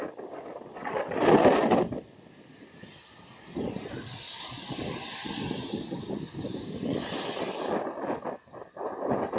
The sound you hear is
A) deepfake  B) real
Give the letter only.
B